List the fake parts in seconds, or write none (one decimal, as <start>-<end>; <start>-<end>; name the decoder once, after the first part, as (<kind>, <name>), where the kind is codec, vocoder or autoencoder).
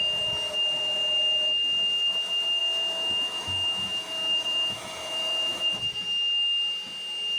2.6-5.7 (autoencoder, DAC-VAE)